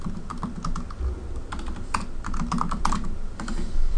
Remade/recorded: recorded